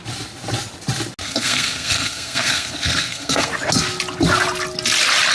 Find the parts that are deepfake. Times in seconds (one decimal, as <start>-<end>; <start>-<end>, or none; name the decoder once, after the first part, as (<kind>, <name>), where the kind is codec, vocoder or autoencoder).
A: 1.2-3.5 (codec, SNAC)